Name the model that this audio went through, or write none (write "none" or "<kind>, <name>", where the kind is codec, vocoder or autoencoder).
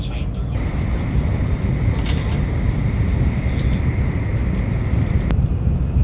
none